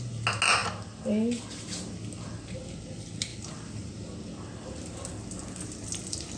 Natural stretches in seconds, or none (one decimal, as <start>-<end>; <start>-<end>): 0.0-6.4